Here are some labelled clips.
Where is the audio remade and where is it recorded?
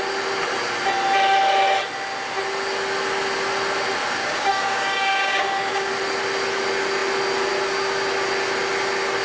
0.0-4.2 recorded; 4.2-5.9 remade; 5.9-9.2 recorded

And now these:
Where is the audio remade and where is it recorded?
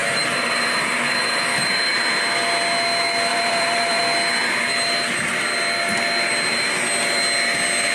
0.0-2.0 remade; 2.0-3.3 recorded; 3.3-4.0 remade; 4.0-7.9 recorded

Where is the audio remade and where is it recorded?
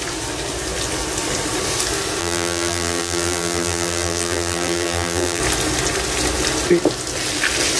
0.0-2.2 recorded; 2.2-5.4 remade; 5.4-7.8 recorded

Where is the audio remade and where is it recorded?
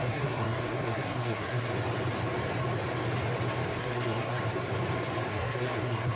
0.0-1.7 remade; 1.7-3.8 recorded; 3.8-4.4 remade; 4.4-5.3 recorded; 5.3-6.2 remade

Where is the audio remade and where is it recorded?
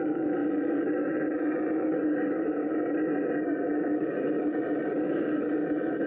0.0-6.1 recorded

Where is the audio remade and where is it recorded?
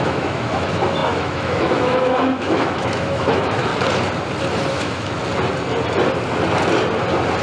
0.0-3.7 remade; 3.7-4.7 recorded; 4.7-5.2 remade; 5.2-7.4 recorded